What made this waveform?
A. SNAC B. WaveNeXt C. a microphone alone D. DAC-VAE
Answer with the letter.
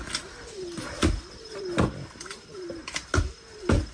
C